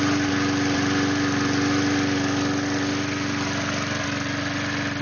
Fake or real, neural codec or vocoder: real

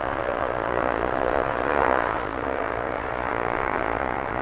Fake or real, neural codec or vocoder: fake, vocoder, Vocos